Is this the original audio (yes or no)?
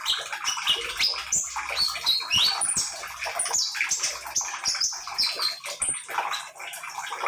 yes